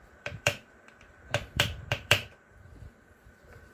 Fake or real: fake